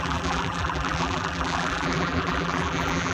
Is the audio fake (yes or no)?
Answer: yes